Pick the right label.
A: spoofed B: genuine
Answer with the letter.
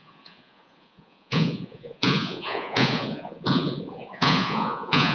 A